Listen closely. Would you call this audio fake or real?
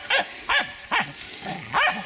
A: real